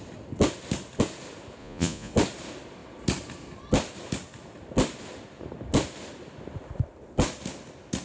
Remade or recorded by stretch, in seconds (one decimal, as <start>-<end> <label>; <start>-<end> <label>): 0.0-1.6 recorded; 1.6-2.1 remade; 2.1-8.0 recorded